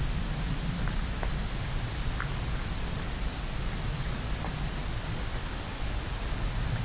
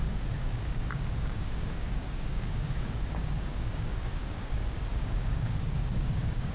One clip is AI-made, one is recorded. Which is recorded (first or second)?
first